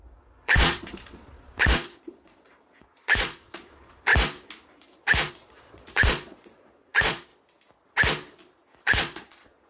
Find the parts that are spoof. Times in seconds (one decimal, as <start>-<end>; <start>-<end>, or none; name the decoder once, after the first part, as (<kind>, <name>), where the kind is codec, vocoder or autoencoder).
0.0-4.1 (vocoder, Vocos); 5.3-7.3; 8.8-9.7